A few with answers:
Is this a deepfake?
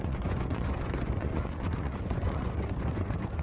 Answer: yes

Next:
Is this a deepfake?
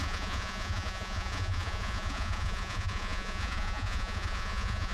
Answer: yes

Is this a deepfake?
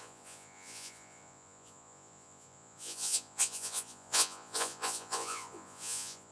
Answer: yes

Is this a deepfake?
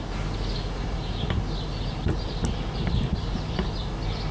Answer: no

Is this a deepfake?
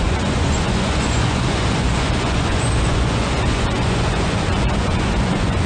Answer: yes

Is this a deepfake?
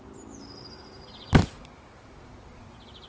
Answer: no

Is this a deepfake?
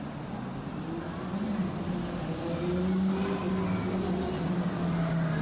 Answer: no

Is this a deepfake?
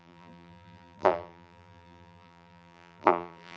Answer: yes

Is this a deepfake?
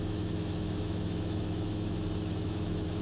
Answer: yes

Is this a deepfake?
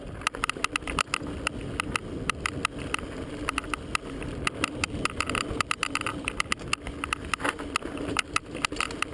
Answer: no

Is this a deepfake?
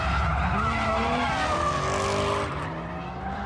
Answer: no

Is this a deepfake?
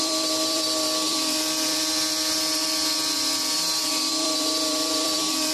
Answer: yes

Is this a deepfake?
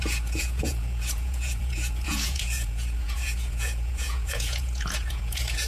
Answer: yes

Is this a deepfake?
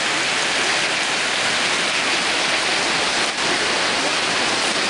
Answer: no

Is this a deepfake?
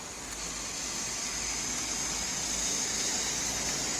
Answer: no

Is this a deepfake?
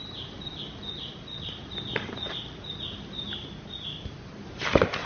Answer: no